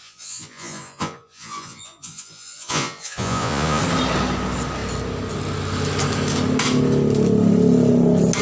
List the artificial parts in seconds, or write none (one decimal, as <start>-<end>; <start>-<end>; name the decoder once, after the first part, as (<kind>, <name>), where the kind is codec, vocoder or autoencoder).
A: 0.0-3.8 (vocoder, Vocos)